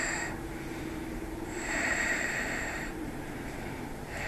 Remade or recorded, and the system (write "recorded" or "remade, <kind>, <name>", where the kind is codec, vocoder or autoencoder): remade, vocoder, BigVGAN v2